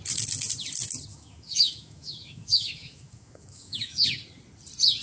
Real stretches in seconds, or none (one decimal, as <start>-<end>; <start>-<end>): 0.0-1.1; 4.1-5.0